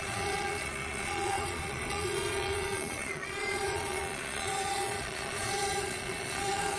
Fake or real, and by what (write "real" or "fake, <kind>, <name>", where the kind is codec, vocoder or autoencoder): fake, vocoder, Vocos